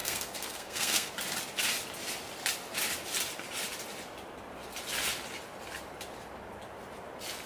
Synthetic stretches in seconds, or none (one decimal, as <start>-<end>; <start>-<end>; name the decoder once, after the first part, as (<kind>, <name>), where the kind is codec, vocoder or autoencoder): 0.0-1.1 (codec, SNAC)

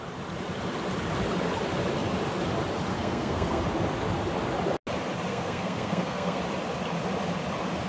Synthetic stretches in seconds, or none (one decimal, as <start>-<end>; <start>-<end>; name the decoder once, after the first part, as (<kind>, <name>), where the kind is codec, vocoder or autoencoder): 2.9-3.6 (codec, SNAC); 5.3-6.4

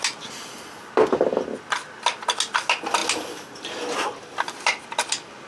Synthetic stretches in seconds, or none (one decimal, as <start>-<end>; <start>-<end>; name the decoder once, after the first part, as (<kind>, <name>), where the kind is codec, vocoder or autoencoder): none

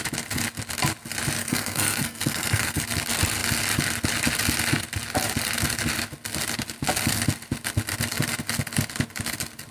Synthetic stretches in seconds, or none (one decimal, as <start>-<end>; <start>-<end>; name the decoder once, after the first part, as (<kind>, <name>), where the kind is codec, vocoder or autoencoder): 1.4-2.8 (codec, SNAC)

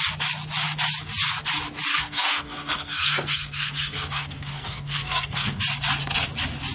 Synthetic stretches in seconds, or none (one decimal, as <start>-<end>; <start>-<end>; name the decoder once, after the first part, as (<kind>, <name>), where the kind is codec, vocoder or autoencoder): 1.9-5.6 (codec, SNAC)

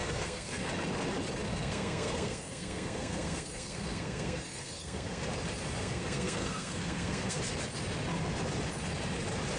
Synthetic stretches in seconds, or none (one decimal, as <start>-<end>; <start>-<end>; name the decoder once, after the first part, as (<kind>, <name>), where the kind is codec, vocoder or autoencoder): 0.0-0.7 (codec, SNAC); 1.5-5.2; 5.8-7.4